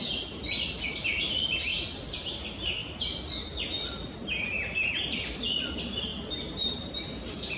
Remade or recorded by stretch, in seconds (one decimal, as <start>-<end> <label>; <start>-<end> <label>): 0.0-4.2 recorded; 4.2-5.1 remade; 5.1-6.1 recorded; 6.1-7.0 remade; 7.0-7.6 recorded